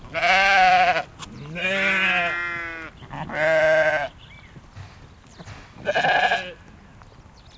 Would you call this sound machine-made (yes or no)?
no